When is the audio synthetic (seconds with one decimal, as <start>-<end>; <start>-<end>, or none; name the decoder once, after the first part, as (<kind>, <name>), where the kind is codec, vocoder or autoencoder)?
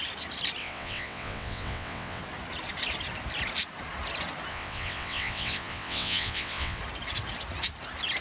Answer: 0.6-2.2 (vocoder, WaveNeXt); 4.5-6.8